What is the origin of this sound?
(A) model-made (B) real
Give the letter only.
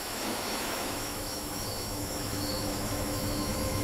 A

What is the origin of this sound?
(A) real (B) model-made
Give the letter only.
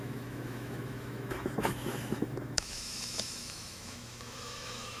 B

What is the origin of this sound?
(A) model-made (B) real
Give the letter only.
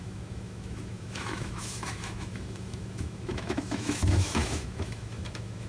A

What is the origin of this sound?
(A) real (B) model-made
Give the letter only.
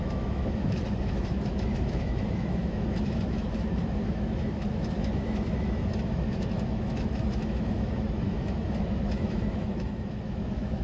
B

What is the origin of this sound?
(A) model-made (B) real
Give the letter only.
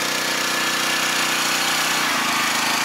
B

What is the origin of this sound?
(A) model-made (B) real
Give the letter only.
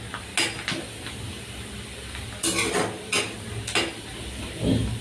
B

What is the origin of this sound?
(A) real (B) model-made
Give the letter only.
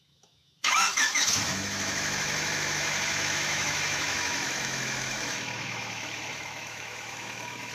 B